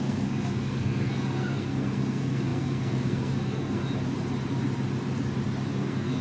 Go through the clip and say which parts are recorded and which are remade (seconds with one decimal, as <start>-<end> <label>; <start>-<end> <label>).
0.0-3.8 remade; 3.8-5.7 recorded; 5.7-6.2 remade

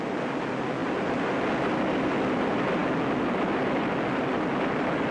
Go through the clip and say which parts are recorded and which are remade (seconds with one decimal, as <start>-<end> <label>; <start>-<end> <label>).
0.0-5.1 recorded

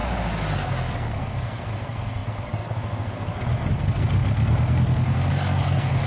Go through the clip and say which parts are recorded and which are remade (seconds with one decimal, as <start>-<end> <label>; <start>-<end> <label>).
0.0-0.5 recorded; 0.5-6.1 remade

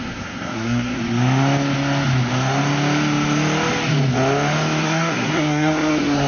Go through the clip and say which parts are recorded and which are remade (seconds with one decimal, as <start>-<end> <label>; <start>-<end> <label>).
0.0-1.0 remade; 1.0-4.8 recorded; 4.8-6.3 remade

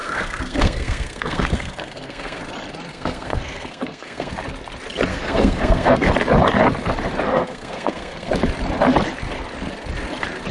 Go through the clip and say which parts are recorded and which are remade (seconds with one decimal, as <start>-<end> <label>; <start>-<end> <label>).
0.0-2.4 remade; 2.4-2.9 recorded; 2.9-4.3 remade; 4.3-5.1 recorded; 5.1-6.1 remade; 6.1-7.3 recorded; 7.3-8.3 remade; 8.3-10.5 recorded